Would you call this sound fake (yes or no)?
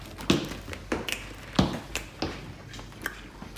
no